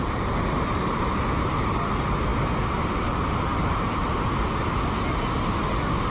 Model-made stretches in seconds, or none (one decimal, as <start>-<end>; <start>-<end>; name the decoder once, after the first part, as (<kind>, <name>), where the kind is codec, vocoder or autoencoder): none